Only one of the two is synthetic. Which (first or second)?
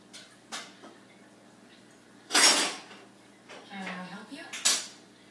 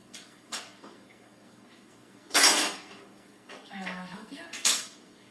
second